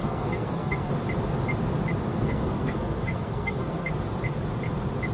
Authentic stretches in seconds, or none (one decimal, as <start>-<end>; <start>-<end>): 0.9-2.1; 3.9-5.1